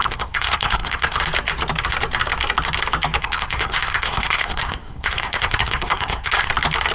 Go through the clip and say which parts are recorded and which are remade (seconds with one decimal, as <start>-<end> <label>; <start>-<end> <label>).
0.0-1.2 remade; 1.2-3.2 recorded; 3.2-6.5 remade; 6.5-6.9 recorded